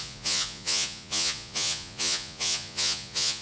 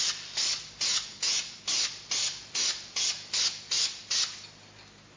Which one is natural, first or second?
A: second